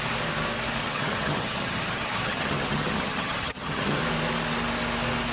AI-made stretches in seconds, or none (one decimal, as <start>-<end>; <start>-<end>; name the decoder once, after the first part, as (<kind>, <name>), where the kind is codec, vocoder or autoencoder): 0.8-4.0 (vocoder, HiFi-GAN)